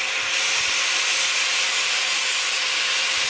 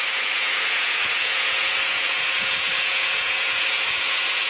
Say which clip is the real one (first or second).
first